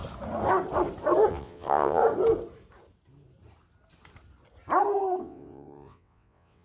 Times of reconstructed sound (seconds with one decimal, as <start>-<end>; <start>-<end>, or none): 1.3-2.0; 5.2-6.6

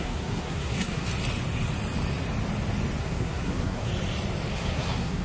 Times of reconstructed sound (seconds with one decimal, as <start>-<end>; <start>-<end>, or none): 0.0-1.1; 3.0-3.9; 4.5-5.2

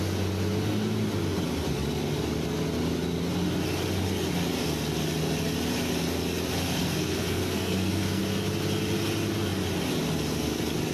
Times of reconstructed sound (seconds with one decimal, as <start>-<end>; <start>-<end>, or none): 6.8-8.2

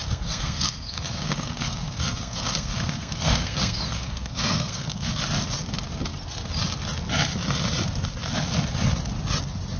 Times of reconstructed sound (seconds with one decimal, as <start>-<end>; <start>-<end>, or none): 0.0-5.1

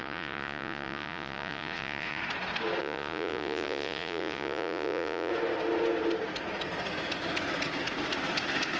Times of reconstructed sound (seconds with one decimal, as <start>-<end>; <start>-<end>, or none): 0.0-2.2; 2.8-5.3

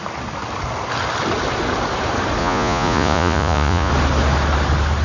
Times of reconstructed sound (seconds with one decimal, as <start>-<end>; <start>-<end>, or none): 2.4-3.9

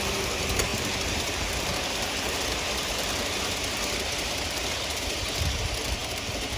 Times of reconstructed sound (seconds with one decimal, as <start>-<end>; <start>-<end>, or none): 0.7-4.7; 6.0-6.6